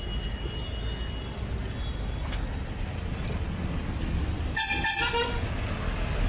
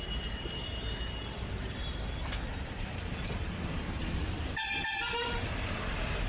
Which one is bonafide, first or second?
first